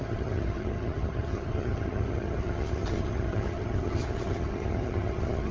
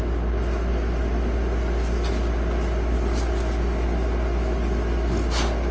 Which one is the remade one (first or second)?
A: first